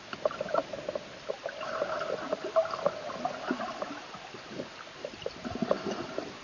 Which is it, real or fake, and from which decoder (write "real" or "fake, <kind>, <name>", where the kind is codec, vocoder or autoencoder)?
real